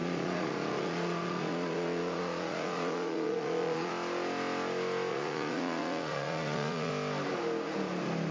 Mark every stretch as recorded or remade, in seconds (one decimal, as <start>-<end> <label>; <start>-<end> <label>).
0.0-3.9 remade; 3.9-5.1 recorded; 5.1-6.9 remade; 6.9-8.3 recorded